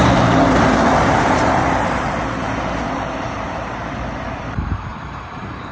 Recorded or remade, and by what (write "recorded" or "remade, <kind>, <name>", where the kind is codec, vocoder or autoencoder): remade, vocoder, BigVGAN v2